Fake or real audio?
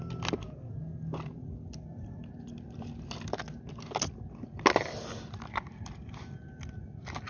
real